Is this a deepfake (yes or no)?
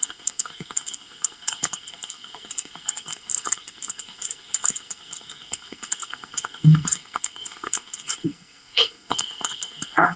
yes